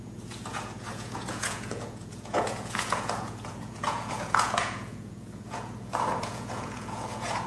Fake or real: fake